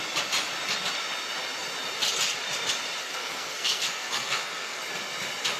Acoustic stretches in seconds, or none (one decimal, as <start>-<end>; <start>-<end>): 0.0-3.0; 4.8-5.6